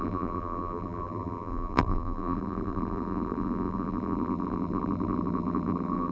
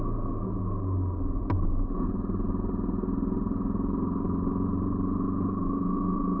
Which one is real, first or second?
second